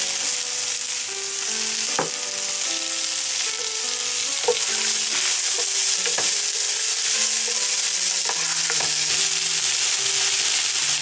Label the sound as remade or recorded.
recorded